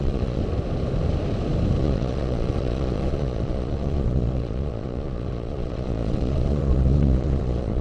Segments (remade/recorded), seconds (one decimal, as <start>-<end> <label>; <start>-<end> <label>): 0.0-0.4 remade; 0.4-1.8 recorded; 1.8-7.8 remade